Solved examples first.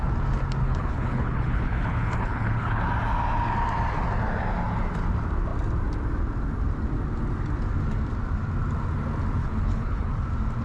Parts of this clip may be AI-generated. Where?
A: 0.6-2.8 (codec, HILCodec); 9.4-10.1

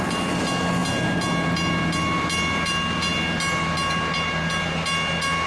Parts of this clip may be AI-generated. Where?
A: none

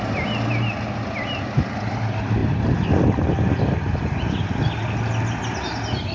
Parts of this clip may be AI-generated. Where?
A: none

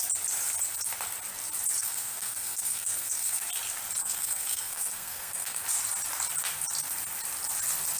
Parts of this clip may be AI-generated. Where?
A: 1.8-3.4 (codec, SNAC); 4.0-5.6

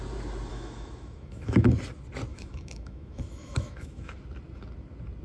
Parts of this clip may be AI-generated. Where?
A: 0.5-1.7 (autoencoder, DAC-VAE); 2.3-4.1

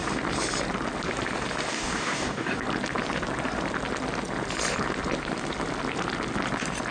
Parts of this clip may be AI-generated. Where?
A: 1.7-2.6 (codec, DAC)

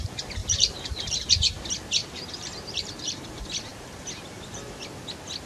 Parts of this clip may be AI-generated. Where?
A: 0.4-1.3 (vocoder, BigVGAN v2); 2.0-3.2

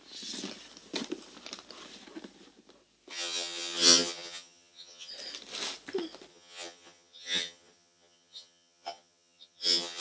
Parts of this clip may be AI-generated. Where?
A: 3.1-5.1 (vocoder, HiFi-GAN); 6.3-10.0